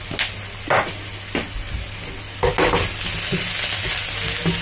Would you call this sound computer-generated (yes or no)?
no